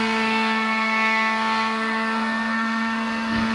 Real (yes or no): no